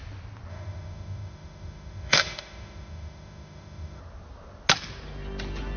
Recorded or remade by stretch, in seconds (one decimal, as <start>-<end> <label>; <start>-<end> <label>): 0.0-0.5 recorded; 0.5-4.0 remade; 4.0-5.8 recorded